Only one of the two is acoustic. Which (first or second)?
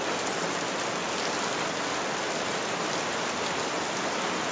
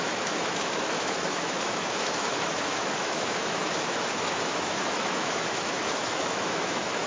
first